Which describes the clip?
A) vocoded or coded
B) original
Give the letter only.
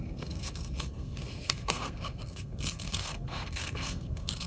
A